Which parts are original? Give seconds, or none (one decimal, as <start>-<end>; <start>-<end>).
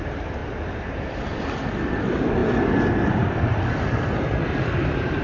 0.0-5.2